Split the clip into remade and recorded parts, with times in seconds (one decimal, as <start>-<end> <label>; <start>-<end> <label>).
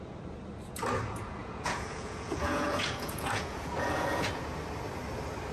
0.0-1.4 recorded; 1.4-4.4 remade; 4.4-5.5 recorded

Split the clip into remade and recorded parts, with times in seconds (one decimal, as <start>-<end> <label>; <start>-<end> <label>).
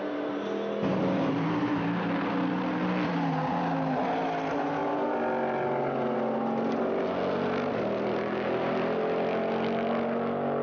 0.0-0.9 recorded; 0.9-2.8 remade; 2.8-10.6 recorded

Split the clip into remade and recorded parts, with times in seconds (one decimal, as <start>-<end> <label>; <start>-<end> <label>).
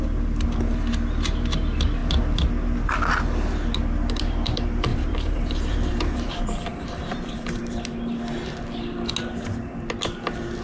0.0-4.9 recorded; 4.9-6.3 remade; 6.3-6.7 recorded; 6.7-7.8 remade; 7.8-10.6 recorded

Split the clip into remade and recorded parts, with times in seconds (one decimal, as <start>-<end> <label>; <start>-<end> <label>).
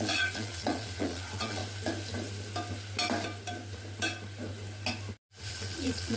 0.0-1.6 remade; 1.6-5.3 recorded; 5.3-6.2 remade